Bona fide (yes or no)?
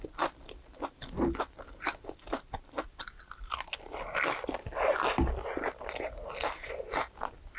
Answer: yes